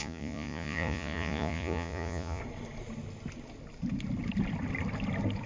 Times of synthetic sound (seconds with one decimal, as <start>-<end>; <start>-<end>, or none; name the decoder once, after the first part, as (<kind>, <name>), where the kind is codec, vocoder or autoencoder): 0.0-2.4 (vocoder, Vocos)